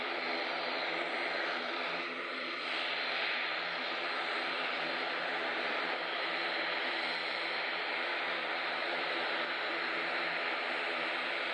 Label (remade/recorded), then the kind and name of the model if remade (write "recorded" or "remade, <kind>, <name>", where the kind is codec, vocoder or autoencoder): remade, vocoder, BigVGAN v2